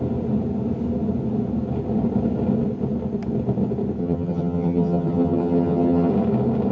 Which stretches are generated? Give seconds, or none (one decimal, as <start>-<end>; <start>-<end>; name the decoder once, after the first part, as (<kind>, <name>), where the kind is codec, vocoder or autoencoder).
4.0-6.1 (vocoder, HiFi-GAN)

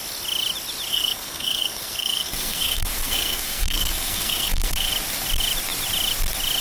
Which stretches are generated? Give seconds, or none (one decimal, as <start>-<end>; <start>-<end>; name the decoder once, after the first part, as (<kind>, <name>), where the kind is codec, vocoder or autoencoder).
0.9-4.9 (codec, SNAC)